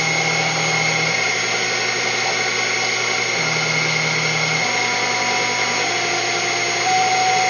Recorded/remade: recorded